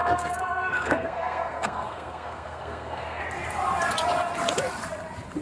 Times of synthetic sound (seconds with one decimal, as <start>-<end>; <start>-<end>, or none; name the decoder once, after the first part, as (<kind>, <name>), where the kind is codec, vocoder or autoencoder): 0.0-3.2 (codec, SNAC)